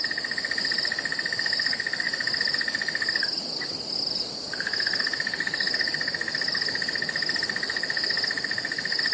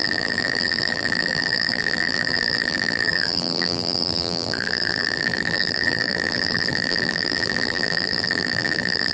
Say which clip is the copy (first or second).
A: second